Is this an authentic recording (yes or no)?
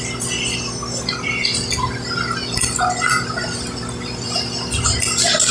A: yes